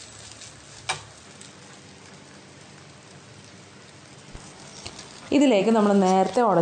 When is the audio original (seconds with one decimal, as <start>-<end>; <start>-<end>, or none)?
0.0-6.6